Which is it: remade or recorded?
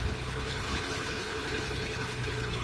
remade